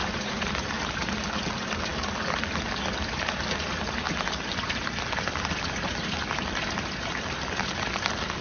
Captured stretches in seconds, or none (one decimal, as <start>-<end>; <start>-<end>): 0.5-8.4